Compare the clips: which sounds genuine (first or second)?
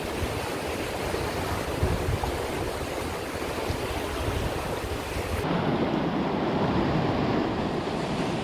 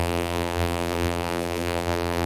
first